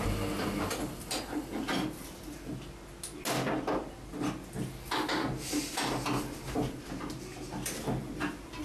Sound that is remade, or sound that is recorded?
recorded